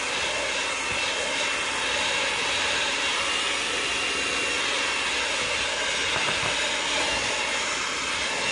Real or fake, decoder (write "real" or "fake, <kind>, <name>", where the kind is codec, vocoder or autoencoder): real